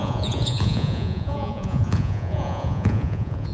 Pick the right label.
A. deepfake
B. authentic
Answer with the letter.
A